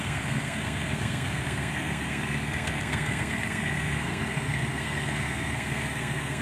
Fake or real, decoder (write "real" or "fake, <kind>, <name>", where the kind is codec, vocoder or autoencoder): fake, codec, SNAC